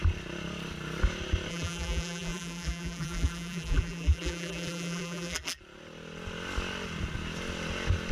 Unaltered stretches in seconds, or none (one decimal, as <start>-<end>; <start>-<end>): 0.0-1.5; 5.6-8.1